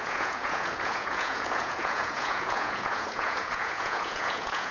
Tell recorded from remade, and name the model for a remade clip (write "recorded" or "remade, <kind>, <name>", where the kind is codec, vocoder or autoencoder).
remade, vocoder, Vocos